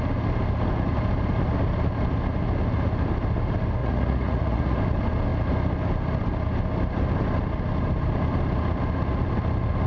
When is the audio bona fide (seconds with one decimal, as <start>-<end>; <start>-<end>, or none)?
0.0-3.8; 4.8-9.9